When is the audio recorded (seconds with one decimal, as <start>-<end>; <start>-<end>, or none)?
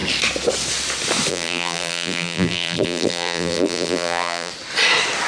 0.0-1.3; 4.5-5.3